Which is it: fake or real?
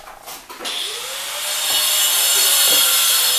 real